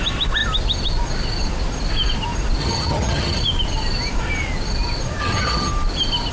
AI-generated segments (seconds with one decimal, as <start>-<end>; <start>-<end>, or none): 2.6-3.4; 5.2-5.7